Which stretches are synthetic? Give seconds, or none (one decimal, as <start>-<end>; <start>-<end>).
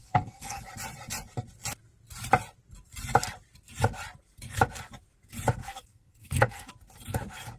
0.0-0.6; 5.6-6.7